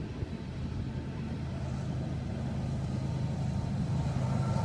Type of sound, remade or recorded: recorded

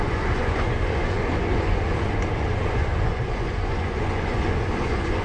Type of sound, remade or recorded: remade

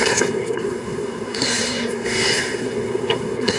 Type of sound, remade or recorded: remade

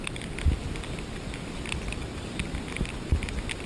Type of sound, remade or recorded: recorded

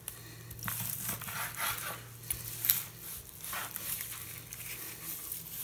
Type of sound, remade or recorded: recorded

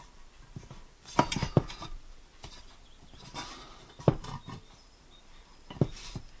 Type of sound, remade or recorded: remade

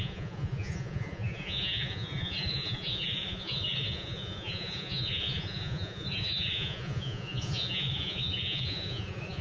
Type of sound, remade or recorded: remade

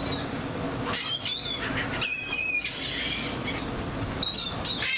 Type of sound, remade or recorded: recorded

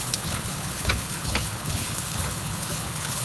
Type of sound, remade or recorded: remade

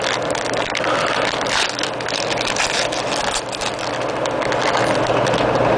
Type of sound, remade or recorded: recorded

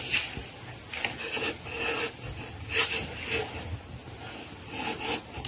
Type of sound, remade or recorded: recorded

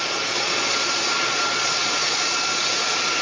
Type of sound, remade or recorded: remade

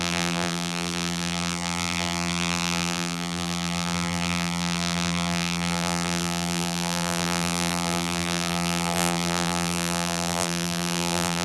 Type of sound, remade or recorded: remade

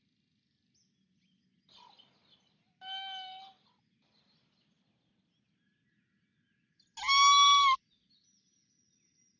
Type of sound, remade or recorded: recorded